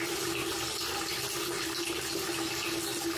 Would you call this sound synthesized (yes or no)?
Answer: no